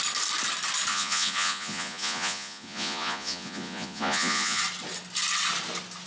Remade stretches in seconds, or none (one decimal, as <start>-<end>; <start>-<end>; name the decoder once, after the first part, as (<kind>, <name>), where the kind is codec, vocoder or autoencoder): 0.9-4.6 (vocoder, Vocos)